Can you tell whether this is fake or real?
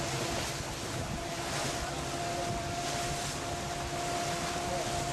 real